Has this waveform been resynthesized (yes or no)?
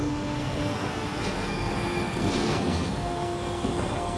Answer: yes